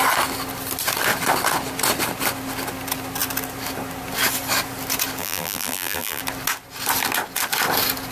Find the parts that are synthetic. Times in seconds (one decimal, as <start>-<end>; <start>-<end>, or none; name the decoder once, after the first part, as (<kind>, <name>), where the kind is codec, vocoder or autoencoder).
5.2-6.2 (vocoder, BigVGAN v2)